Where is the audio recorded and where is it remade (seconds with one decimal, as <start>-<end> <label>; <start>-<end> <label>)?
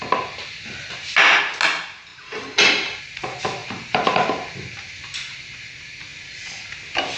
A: 0.0-7.2 recorded